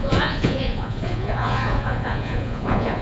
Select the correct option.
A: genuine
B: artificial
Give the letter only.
B